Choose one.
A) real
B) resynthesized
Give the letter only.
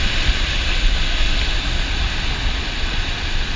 A